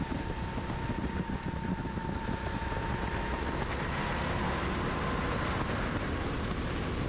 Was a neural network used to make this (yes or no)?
no